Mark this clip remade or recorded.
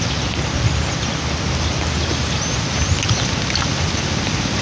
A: recorded